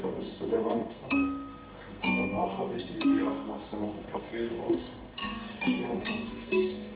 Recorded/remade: remade